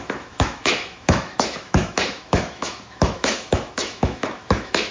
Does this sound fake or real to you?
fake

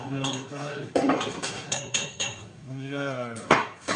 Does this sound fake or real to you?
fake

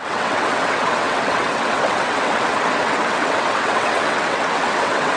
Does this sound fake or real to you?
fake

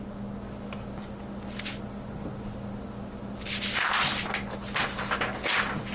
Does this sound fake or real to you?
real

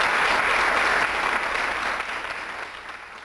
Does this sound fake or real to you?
real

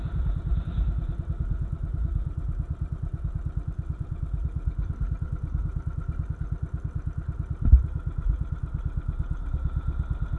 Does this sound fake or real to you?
real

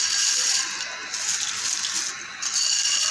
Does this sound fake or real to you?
real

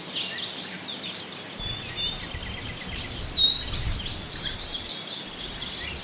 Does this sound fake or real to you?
real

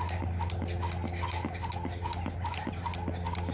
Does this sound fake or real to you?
real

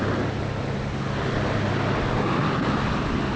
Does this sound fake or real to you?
real